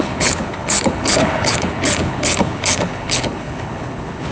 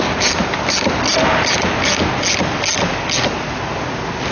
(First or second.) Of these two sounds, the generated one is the first